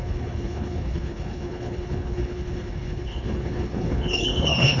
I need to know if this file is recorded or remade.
remade